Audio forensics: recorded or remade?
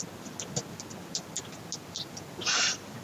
recorded